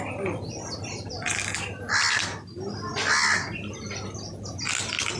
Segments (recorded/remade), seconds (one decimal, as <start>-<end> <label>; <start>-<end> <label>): 0.0-5.2 recorded